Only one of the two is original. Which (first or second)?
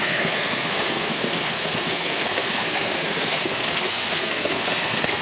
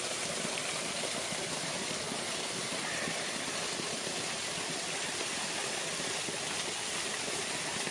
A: second